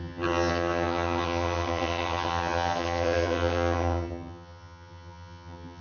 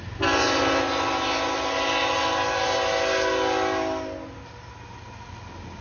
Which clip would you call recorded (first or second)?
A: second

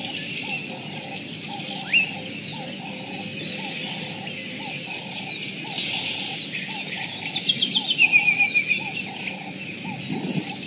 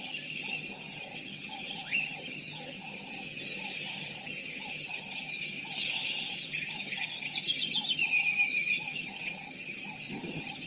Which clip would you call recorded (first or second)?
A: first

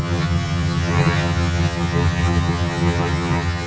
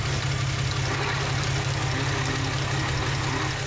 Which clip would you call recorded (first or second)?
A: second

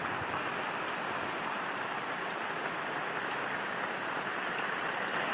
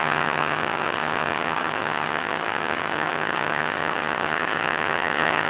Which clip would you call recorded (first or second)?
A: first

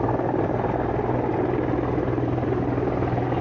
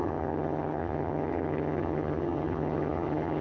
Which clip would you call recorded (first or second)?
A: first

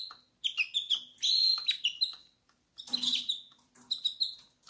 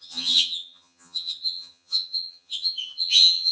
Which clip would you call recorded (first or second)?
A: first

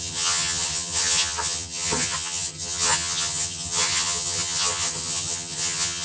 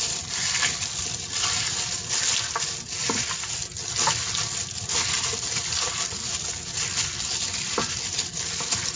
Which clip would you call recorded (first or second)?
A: second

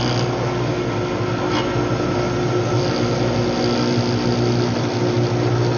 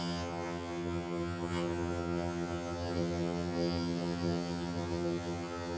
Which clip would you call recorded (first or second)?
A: first